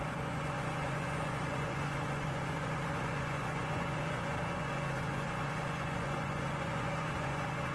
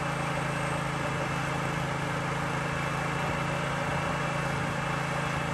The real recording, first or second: second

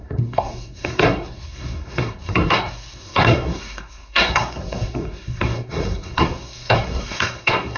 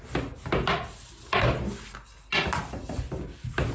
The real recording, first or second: second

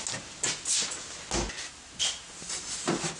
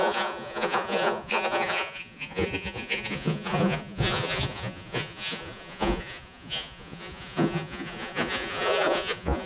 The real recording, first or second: first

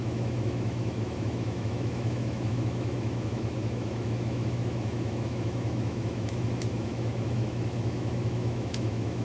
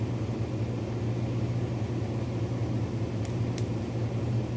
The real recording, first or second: second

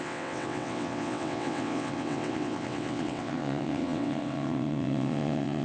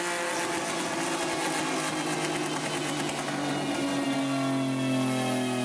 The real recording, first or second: second